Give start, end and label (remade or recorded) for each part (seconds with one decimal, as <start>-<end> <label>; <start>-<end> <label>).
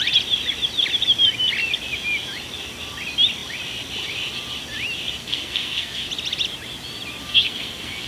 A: 0.0-5.2 recorded; 5.2-6.1 remade; 6.1-7.2 recorded; 7.2-8.1 remade